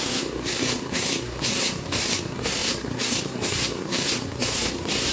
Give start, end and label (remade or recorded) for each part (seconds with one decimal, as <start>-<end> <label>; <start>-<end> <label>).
0.0-5.1 remade